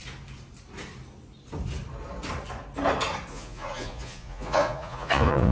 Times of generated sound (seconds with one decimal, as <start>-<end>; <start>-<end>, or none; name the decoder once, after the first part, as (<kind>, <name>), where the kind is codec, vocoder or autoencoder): 3.3-5.5 (vocoder, Vocos)